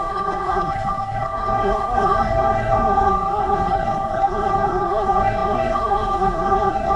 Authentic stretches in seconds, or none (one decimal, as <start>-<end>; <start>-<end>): none